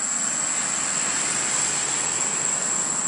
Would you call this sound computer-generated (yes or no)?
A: no